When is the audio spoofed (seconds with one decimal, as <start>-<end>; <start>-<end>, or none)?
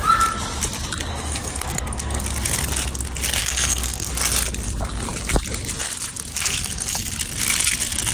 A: 1.1-2.2; 3.4-4.1; 6.3-7.1